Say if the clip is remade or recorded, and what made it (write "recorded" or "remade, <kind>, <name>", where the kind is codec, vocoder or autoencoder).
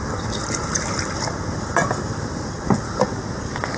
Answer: recorded